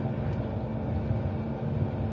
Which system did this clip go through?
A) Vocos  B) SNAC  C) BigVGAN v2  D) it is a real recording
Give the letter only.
D